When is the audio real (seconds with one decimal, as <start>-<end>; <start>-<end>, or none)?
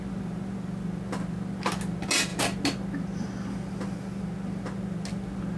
0.0-5.6